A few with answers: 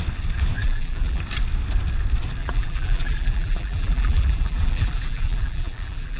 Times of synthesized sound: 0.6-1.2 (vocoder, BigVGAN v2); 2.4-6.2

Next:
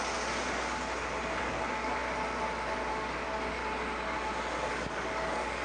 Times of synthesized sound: 1.4-2.0 (codec, DAC); 2.9-3.6; 4.7-5.6

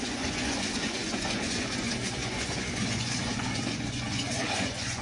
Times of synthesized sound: 0.0-5.0 (vocoder, Vocos)

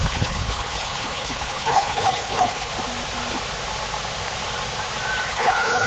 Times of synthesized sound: 0.0-2.7 (codec, HILCodec); 5.3-5.9

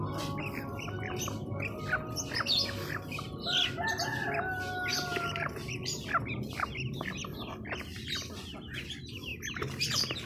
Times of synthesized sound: 4.9-5.7 (vocoder, BigVGAN v2)

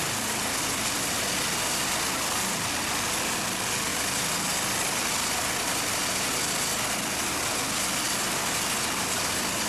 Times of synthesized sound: none

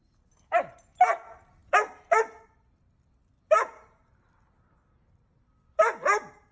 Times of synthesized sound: none